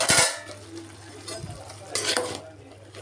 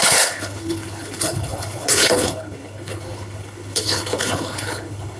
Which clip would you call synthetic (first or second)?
second